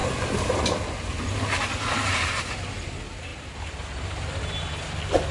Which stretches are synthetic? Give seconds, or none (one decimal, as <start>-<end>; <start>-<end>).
none

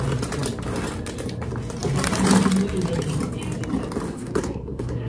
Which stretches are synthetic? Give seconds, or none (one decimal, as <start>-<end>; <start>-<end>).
4.1-5.1

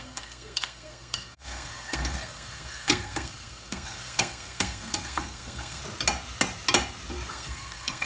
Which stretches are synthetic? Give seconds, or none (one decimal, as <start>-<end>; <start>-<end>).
0.0-5.8; 7.3-8.1

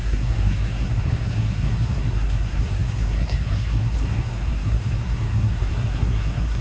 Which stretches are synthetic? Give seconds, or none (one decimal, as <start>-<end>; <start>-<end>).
0.0-6.6

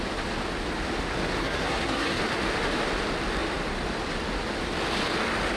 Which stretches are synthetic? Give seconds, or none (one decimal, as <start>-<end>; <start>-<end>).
1.4-2.2

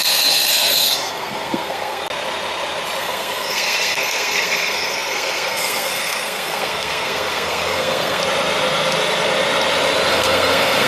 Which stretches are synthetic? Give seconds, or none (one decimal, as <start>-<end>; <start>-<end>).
0.0-2.0; 3.0-8.2; 10.1-10.9